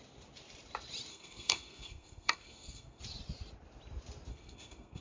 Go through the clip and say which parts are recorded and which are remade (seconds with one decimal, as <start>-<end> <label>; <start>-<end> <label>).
0.0-1.1 recorded; 1.1-3.0 remade; 3.0-4.3 recorded; 4.3-5.0 remade